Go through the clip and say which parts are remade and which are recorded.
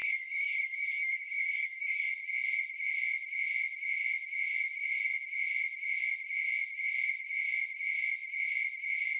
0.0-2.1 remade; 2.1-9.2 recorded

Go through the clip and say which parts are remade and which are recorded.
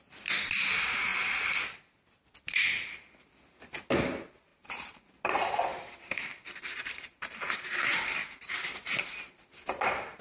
0.0-4.5 recorded; 4.5-5.1 remade; 5.1-5.7 recorded; 5.7-8.5 remade; 8.5-10.2 recorded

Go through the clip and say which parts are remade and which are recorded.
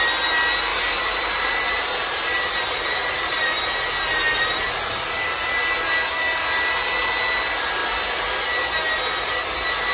0.0-0.7 recorded; 0.7-3.6 remade; 3.6-9.9 recorded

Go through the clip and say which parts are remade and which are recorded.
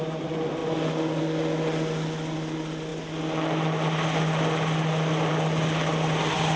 0.0-6.6 recorded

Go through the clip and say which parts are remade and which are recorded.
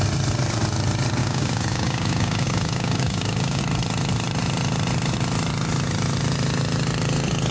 0.0-1.2 recorded; 1.2-3.6 remade; 3.6-7.5 recorded